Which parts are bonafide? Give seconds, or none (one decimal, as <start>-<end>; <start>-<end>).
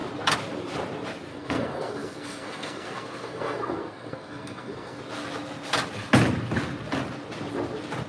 0.0-1.3; 5.0-8.1